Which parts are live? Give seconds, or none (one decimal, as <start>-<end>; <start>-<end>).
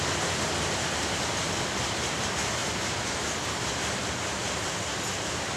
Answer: 0.0-5.6